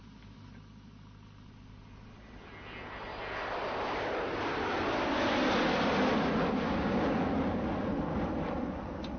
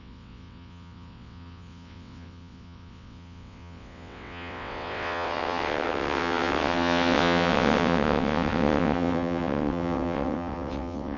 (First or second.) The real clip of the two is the first